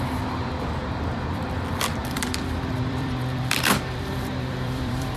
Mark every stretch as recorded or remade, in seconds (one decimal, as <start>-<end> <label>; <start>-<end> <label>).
0.0-2.0 recorded; 2.0-5.2 remade